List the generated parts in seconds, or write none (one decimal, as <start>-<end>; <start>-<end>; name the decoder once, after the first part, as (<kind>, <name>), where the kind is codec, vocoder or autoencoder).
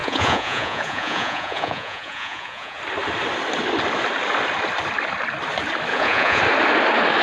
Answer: 0.0-2.8 (vocoder, Vocos); 5.9-6.4